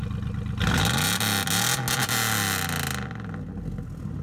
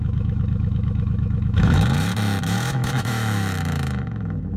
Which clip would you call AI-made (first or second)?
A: second